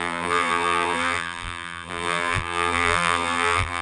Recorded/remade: remade